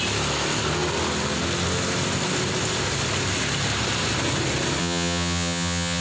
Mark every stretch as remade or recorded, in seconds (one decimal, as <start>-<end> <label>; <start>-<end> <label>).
0.0-4.8 recorded; 4.8-6.0 remade